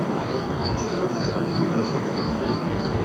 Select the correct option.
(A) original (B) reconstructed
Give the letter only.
B